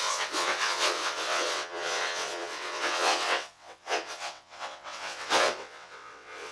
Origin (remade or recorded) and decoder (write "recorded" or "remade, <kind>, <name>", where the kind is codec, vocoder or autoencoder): remade, vocoder, WaveNeXt